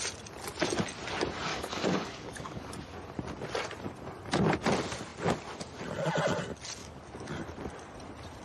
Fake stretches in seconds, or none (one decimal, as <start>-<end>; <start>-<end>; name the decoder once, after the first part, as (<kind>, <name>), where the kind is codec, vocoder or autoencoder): 1.5-2.7 (codec, DAC); 6.8-7.3